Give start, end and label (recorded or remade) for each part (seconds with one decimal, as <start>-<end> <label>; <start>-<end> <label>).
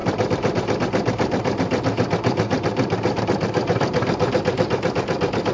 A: 0.0-3.2 remade; 3.2-5.5 recorded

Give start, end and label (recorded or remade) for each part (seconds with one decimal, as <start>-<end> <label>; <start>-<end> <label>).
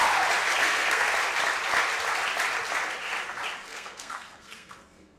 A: 0.0-0.6 recorded; 0.6-1.1 remade; 1.1-3.6 recorded; 3.6-5.2 remade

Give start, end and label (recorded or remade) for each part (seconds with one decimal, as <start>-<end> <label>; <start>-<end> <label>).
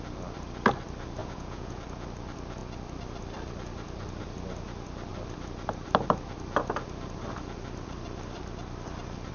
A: 0.0-1.2 recorded; 1.2-1.8 remade; 1.8-9.3 recorded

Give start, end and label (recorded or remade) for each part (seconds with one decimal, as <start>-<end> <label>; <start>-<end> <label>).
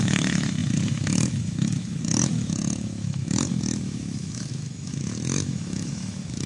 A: 0.0-6.5 remade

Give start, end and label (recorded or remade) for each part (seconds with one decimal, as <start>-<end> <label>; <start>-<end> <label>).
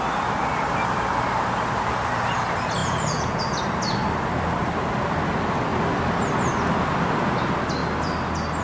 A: 0.0-2.8 recorded; 2.8-3.4 remade; 3.4-8.6 recorded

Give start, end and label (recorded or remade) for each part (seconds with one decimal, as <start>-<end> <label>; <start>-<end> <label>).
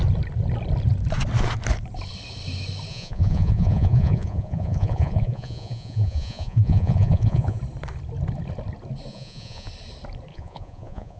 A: 0.0-2.9 recorded; 2.9-7.6 remade; 7.6-9.1 recorded; 9.1-9.7 remade; 9.7-10.3 recorded; 10.3-11.2 remade